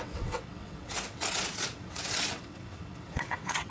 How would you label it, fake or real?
fake